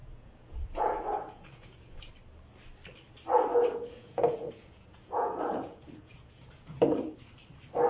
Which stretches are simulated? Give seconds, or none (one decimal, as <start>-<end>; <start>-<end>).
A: 0.0-2.1; 3.5-6.8